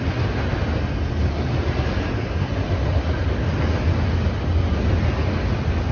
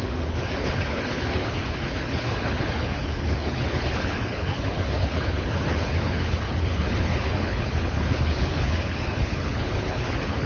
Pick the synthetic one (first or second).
second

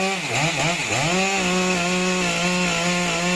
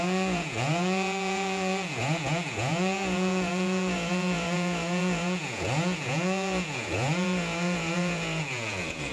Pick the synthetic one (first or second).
second